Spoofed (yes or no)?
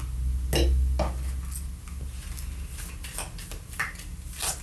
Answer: no